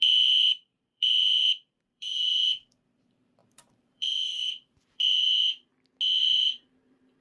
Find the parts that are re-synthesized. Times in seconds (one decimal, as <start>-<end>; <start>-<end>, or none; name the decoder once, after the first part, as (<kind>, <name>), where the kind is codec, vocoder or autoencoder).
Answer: 0.0-5.7 (vocoder, BigVGAN v2); 6.2-7.2